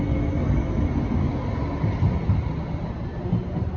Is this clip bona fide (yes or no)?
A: yes